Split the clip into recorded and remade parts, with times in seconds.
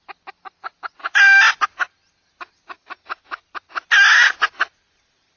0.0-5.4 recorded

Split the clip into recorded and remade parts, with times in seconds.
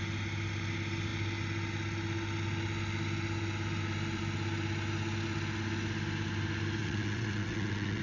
0.0-6.8 recorded; 6.8-8.0 remade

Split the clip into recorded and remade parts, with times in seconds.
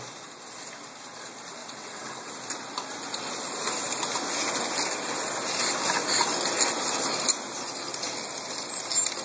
0.0-1.6 recorded; 1.6-2.3 remade; 2.3-9.2 recorded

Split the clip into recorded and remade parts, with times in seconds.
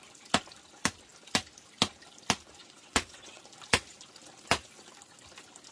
0.0-2.6 recorded; 2.6-3.4 remade; 3.4-5.7 recorded